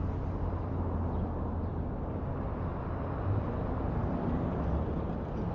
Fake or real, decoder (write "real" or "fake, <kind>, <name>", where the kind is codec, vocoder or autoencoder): real